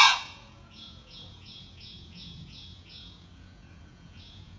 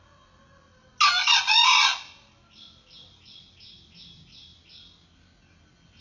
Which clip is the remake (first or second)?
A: first